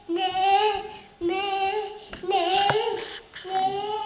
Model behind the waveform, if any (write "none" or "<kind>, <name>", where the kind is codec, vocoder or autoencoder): none